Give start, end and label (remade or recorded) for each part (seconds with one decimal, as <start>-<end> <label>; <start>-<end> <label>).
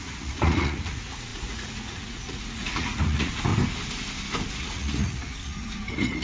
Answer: 0.0-3.5 remade; 3.5-4.5 recorded; 4.5-6.2 remade